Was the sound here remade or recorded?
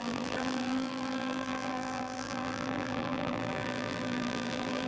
remade